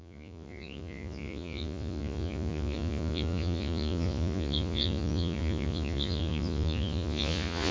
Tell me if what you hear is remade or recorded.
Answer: remade